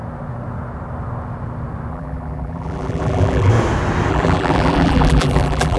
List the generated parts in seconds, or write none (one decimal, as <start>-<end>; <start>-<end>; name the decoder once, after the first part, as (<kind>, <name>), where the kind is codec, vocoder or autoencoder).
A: 1.9-3.5 (vocoder, BigVGAN v2); 4.1-5.8